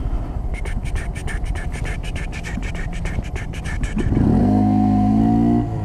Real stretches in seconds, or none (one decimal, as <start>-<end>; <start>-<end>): 0.0-4.4; 5.2-5.8

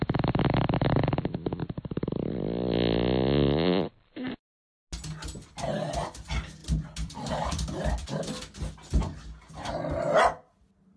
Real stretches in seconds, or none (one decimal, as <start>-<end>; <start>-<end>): 0.0-6.6; 7.8-11.0

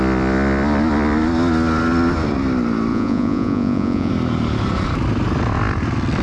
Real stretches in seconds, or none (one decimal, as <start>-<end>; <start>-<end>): 0.0-2.9; 4.1-6.2